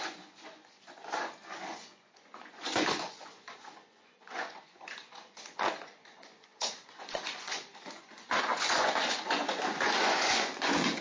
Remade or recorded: remade